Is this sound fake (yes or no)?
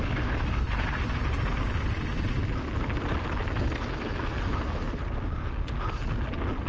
no